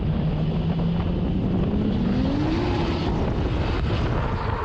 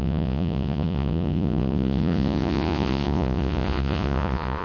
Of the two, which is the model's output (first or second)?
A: second